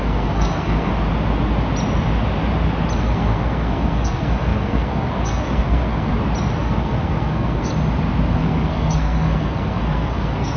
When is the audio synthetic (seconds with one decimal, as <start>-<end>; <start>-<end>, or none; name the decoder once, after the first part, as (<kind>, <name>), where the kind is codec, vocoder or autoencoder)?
0.0-0.9 (codec, SNAC); 3.0-6.1; 6.6-7.7; 8.3-10.6